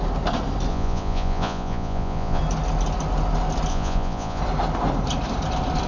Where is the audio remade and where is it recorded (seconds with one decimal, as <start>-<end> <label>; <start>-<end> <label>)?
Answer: 0.0-0.7 recorded; 0.7-2.4 remade; 2.4-3.7 recorded; 3.7-4.4 remade; 4.4-5.9 recorded